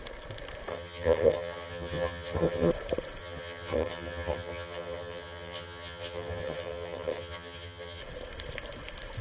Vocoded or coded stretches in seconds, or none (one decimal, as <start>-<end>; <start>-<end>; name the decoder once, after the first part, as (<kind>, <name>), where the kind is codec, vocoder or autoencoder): 0.7-2.7 (vocoder, HiFi-GAN); 3.2-8.0

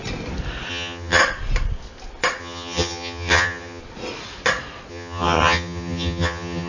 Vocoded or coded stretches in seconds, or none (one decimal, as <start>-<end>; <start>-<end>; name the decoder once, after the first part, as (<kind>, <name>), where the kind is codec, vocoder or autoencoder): 0.7-1.2 (vocoder, HiFi-GAN); 2.4-3.8; 4.9-6.7

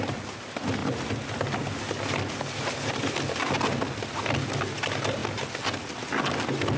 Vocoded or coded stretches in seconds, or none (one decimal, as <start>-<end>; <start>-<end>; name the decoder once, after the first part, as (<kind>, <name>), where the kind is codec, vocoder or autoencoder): none

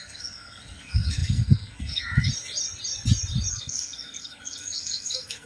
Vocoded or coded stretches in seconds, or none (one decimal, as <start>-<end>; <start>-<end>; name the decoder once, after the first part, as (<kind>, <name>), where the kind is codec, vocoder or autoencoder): 0.0-2.3 (codec, SNAC); 3.5-5.5

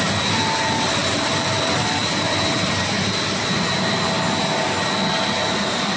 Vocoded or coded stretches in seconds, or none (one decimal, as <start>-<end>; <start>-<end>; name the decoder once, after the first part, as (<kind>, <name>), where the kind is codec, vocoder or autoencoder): 1.0-2.1 (vocoder, BigVGAN v2)

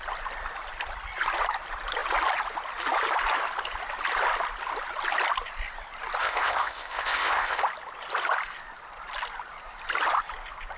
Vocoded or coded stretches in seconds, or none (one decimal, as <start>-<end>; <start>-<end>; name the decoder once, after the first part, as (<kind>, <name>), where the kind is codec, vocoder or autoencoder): 6.2-7.6 (codec, ZipCodec)

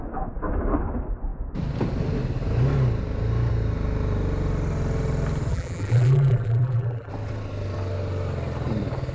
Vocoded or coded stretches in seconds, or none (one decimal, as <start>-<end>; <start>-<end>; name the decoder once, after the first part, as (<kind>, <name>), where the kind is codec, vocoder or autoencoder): 5.5-7.1 (vocoder, BigVGAN v2)

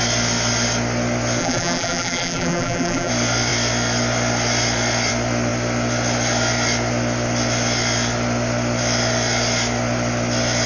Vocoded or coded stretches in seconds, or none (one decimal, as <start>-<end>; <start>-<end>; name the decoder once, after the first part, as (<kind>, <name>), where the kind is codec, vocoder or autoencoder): 1.4-3.1 (vocoder, BigVGAN v2)